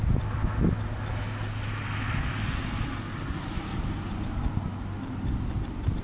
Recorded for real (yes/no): yes